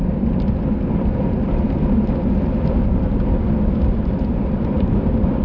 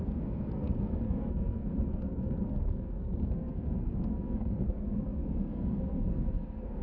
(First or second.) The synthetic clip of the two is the second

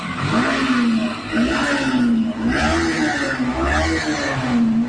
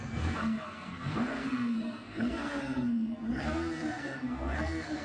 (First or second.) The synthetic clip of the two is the second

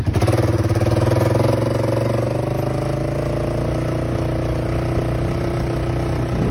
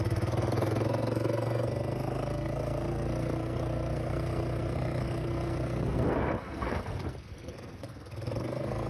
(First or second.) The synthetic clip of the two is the second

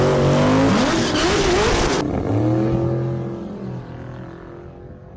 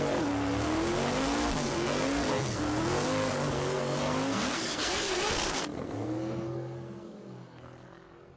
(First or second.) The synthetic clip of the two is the second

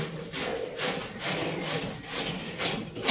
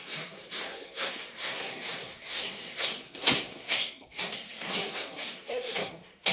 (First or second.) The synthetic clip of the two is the second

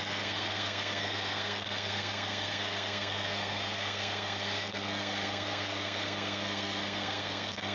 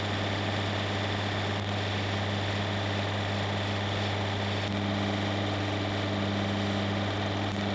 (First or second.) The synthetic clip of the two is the first